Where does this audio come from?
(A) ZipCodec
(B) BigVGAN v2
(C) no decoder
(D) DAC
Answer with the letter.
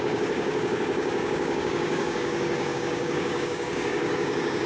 D